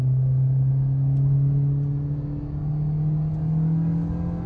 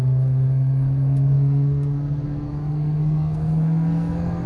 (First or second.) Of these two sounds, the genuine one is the first